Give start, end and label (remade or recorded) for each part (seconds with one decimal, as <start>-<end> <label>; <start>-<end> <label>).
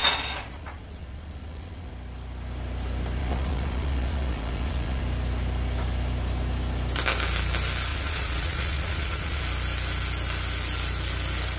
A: 0.0-1.9 remade; 1.9-3.2 recorded; 3.2-5.0 remade; 5.0-7.9 recorded; 7.9-9.4 remade; 9.4-11.6 recorded